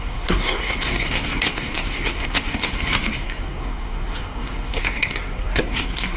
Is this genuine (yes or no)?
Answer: no